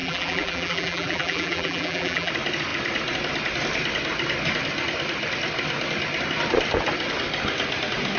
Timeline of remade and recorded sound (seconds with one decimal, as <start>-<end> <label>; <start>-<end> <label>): 0.0-2.3 remade; 2.3-8.2 recorded